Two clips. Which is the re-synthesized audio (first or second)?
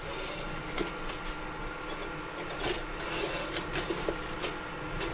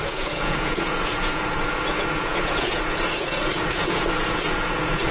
second